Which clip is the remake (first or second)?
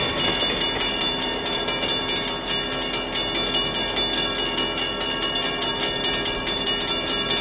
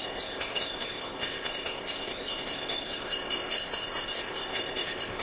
second